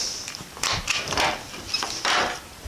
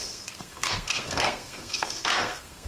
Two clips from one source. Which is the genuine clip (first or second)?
first